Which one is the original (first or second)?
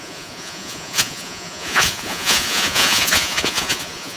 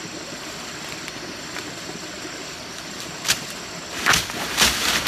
second